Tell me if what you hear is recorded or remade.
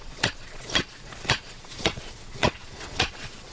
remade